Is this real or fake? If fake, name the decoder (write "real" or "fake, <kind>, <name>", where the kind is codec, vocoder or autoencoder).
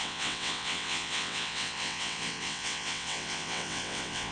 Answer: fake, vocoder, WaveNeXt